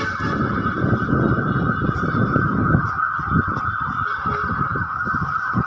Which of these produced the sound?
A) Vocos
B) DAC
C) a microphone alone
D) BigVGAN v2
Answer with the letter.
C